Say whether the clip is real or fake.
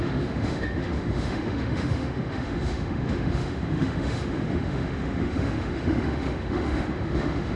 fake